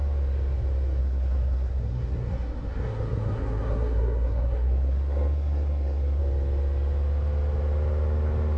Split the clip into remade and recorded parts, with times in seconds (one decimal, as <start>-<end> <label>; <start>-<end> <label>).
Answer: 0.0-1.0 recorded; 1.0-6.2 remade; 6.2-8.6 recorded